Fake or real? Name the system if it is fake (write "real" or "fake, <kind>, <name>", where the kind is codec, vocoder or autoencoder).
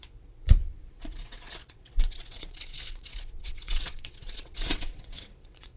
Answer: fake, vocoder, WaveNeXt